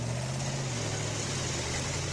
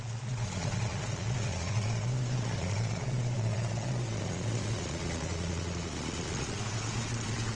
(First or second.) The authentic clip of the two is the first